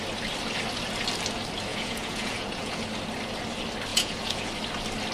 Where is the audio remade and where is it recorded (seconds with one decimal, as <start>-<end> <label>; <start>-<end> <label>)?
0.0-1.7 recorded; 1.7-2.8 remade; 2.8-3.9 recorded; 3.9-4.5 remade; 4.5-5.1 recorded